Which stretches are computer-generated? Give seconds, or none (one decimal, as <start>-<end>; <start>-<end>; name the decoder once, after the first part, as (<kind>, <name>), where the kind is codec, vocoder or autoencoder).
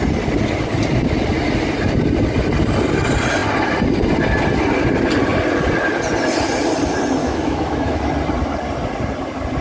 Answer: 7.2-8.0 (autoencoder, DAC-VAE)